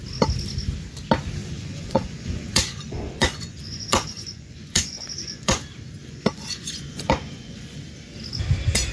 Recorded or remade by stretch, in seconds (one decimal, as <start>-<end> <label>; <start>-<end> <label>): 0.0-1.4 recorded; 1.4-5.6 remade; 5.6-6.0 recorded; 6.0-7.8 remade; 7.8-8.9 recorded